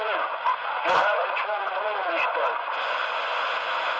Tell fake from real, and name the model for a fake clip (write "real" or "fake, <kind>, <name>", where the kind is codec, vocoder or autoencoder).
fake, vocoder, Vocos